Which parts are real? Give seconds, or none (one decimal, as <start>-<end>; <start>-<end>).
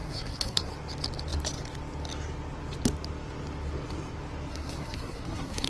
0.7-4.5